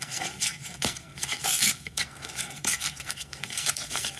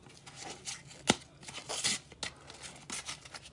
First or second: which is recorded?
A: second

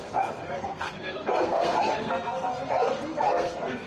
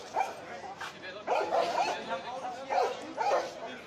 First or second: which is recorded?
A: second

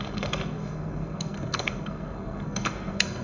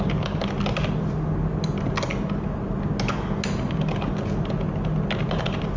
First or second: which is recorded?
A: second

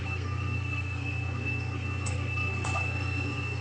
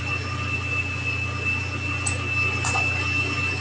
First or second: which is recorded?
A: second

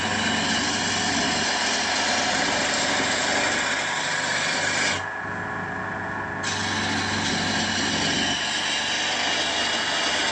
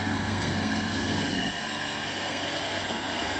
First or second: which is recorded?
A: first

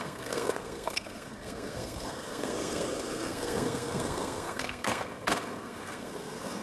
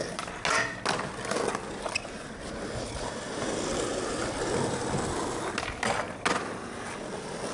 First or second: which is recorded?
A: second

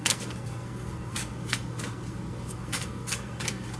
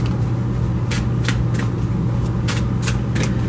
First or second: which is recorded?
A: second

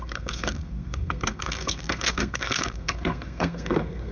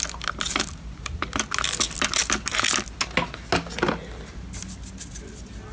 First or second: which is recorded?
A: second